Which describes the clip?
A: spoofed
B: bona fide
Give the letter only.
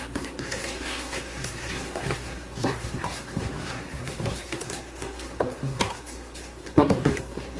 A